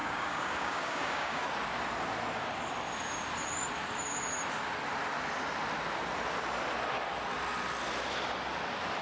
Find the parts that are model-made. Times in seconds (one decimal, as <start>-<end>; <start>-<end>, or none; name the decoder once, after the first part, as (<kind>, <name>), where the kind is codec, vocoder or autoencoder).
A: 0.0-1.4 (codec, DAC)